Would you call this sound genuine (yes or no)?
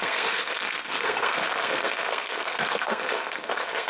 no